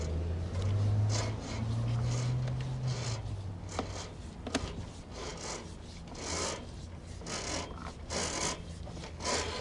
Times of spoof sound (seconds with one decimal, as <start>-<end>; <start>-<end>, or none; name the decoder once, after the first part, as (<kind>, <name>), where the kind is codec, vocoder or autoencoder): none

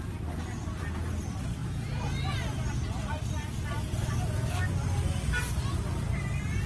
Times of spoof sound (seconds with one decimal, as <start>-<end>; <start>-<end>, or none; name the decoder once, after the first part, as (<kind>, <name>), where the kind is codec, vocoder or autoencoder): none